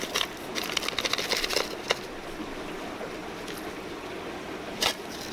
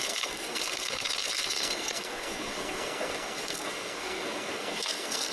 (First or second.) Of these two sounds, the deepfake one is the second